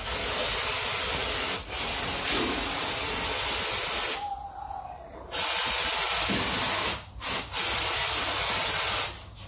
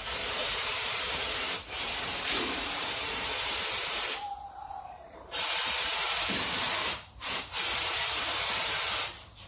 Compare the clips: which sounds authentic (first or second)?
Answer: first